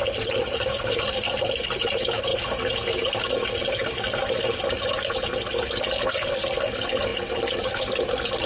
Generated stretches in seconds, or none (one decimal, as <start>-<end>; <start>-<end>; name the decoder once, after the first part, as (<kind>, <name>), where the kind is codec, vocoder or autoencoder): none